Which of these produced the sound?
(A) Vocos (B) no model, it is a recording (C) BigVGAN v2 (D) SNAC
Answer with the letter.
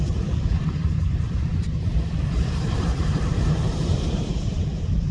C